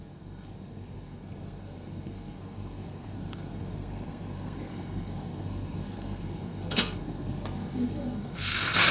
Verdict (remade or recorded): remade